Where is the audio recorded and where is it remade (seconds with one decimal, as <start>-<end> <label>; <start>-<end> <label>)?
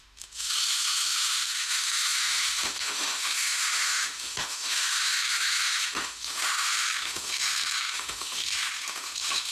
0.0-9.5 remade